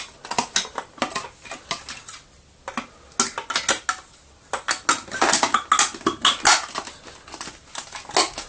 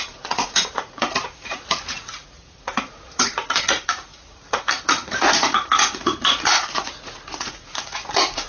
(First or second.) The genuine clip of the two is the first